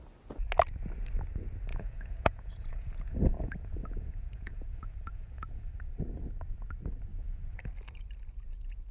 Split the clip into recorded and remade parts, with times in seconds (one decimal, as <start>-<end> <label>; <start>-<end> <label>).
0.0-1.7 recorded; 1.7-5.7 remade; 5.7-7.1 recorded; 7.1-7.7 remade; 7.7-8.9 recorded